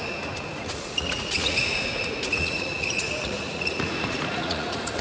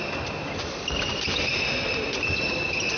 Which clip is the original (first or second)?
second